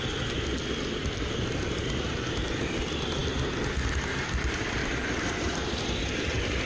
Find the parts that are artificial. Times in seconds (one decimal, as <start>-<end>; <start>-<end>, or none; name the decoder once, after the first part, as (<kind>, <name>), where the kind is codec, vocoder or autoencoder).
4.8-6.0 (vocoder, BigVGAN v2)

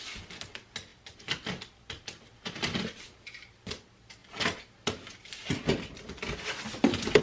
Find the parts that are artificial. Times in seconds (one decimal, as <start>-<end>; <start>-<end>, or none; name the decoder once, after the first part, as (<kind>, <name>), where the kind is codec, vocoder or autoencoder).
none

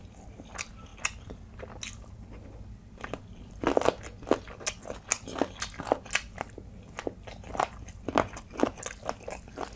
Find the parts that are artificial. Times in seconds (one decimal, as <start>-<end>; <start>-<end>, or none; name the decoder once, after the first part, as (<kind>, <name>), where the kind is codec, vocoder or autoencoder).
none

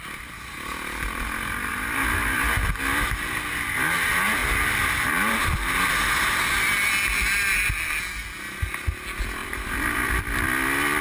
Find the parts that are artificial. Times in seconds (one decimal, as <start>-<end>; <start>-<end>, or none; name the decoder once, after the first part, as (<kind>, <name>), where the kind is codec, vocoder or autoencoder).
1.7-2.7 (vocoder, BigVGAN v2); 9.4-10.2

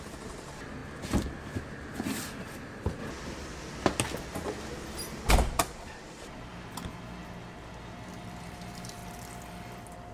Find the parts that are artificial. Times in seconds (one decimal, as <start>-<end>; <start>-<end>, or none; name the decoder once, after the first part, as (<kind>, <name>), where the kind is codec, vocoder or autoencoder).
0.0-0.8 (vocoder, BigVGAN v2); 1.6-3.0; 5.3-6.5; 8.3-9.0

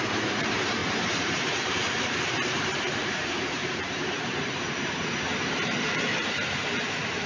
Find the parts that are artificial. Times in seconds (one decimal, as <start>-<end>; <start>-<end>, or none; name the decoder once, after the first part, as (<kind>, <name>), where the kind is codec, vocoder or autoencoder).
0.0-7.3 (vocoder, BigVGAN v2)